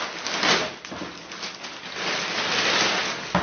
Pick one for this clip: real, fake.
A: real